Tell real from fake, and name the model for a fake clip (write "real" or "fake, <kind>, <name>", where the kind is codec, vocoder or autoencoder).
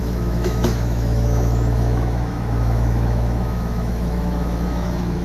fake, autoencoder, DAC-VAE